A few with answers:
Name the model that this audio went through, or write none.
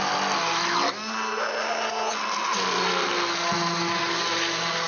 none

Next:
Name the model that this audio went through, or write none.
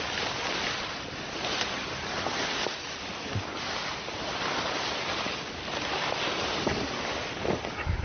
none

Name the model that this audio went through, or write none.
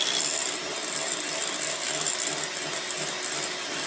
none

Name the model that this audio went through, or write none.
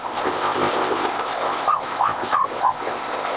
codec, ZipCodec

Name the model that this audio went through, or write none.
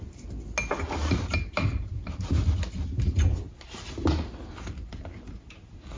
none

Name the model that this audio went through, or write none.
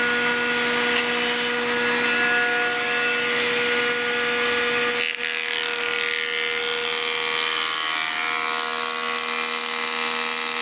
none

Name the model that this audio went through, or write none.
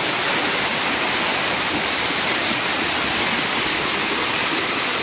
none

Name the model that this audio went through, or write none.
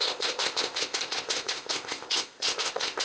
codec, ZipCodec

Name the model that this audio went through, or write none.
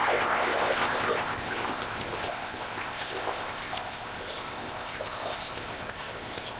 codec, ZipCodec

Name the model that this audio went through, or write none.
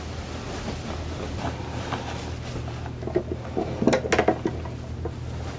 none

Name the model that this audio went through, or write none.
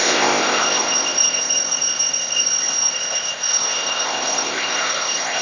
codec, ZipCodec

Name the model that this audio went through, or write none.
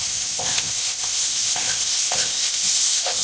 codec, ZipCodec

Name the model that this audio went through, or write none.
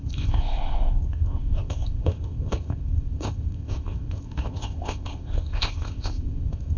codec, ZipCodec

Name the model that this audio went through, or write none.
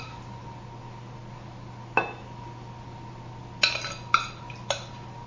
none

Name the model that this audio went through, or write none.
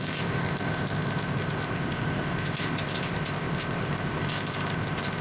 codec, ZipCodec